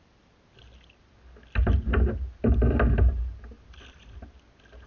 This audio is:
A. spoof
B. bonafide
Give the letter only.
B